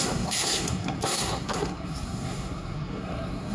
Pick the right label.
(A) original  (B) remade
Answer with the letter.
B